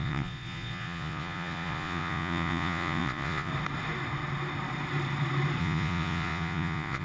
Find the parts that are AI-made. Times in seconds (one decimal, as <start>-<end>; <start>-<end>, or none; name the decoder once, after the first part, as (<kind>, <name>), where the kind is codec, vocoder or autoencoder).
0.0-3.5 (vocoder, Vocos); 5.6-7.0